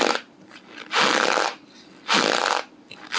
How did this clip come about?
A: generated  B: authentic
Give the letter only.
B